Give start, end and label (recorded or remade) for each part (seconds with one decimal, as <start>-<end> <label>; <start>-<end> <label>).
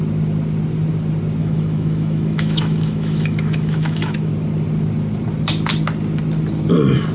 0.0-1.4 recorded; 1.4-4.3 remade; 4.3-7.1 recorded